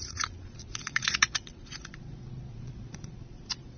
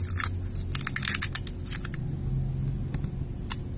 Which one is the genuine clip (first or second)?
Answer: second